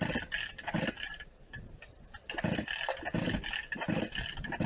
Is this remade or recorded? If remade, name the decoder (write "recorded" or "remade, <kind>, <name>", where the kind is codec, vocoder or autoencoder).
recorded